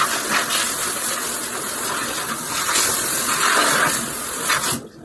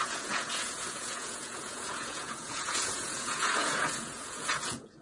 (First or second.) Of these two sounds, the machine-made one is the second